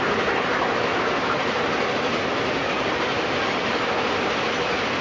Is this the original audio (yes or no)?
yes